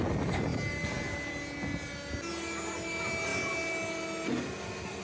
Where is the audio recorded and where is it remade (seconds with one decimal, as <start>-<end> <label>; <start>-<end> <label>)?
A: 0.0-5.0 recorded